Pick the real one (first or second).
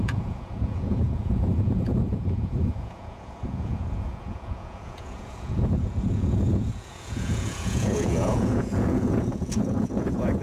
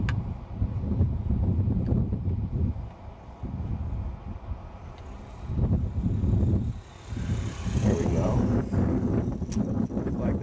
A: second